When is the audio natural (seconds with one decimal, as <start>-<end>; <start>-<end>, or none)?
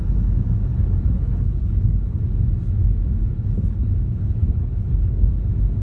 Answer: 0.0-0.7; 2.2-3.2; 5.3-5.8